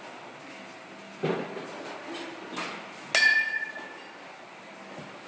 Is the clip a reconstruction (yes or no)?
no